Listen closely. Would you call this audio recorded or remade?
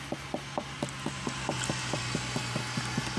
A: recorded